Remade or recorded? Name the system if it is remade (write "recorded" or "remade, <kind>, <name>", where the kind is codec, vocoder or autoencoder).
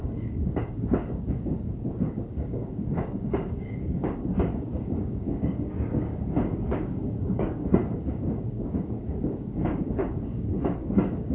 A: remade, codec, DAC